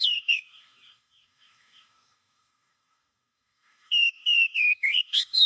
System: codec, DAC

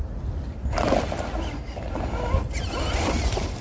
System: none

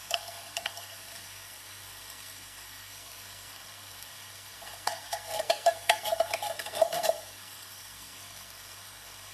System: codec, SNAC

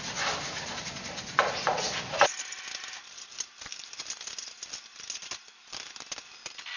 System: none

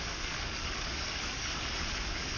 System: codec, DAC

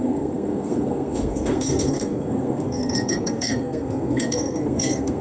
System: codec, SNAC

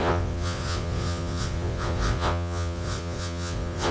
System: vocoder, Vocos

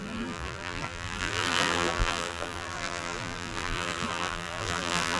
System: vocoder, BigVGAN v2